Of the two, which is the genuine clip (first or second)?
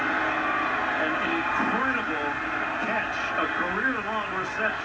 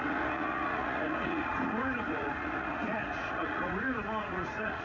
first